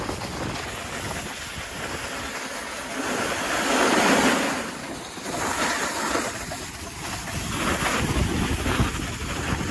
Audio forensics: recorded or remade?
recorded